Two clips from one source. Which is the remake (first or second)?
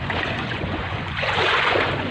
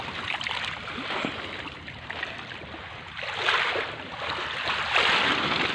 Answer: first